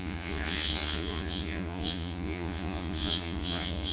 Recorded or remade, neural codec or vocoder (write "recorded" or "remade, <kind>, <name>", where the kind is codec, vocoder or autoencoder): remade, vocoder, Vocos